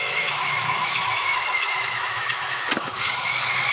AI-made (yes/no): yes